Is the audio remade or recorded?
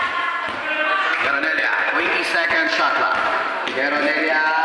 recorded